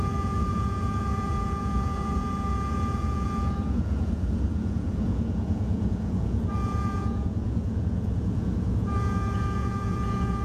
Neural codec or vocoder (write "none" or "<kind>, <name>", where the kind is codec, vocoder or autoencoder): vocoder, Vocos